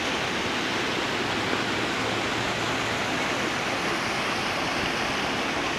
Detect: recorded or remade recorded